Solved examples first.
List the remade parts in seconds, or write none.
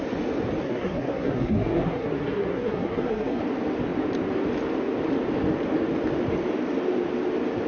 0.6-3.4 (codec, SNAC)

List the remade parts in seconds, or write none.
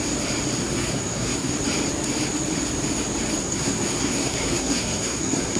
0.6-1.5 (codec, SNAC); 3.4-5.6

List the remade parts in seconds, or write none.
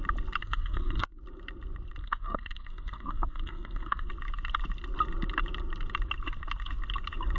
0.4-1.2 (codec, SNAC); 2.0-4.1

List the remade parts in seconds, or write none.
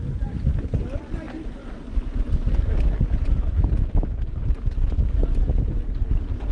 none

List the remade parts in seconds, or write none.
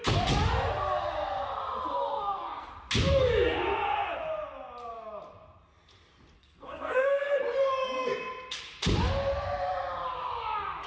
2.1-2.7 (codec, SNAC); 6.4-7.4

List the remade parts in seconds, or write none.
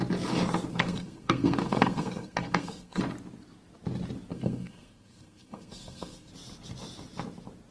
0.7-3.0 (codec, SNAC); 4.3-6.3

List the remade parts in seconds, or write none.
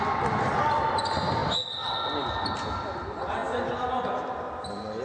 none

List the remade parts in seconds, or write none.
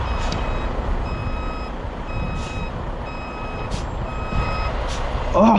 none